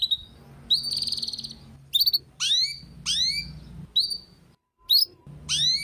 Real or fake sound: real